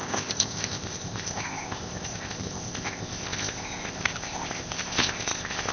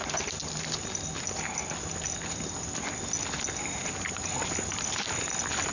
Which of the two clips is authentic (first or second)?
second